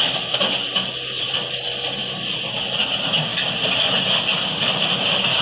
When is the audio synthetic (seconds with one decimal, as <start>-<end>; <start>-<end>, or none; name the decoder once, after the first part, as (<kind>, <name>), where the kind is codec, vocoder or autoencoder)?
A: none